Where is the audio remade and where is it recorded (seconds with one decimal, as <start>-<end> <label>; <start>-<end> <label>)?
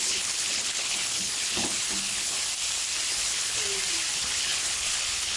0.0-2.4 remade; 2.4-3.1 recorded; 3.1-3.6 remade; 3.6-4.1 recorded; 4.1-5.4 remade